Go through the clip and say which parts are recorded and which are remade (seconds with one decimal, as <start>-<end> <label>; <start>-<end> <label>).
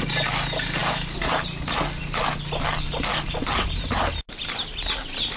0.0-5.4 recorded